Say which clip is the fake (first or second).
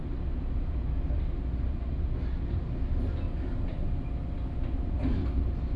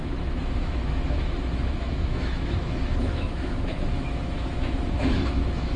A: second